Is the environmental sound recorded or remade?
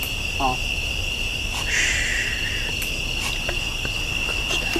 recorded